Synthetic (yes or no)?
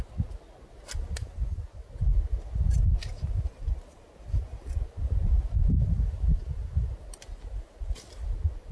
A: no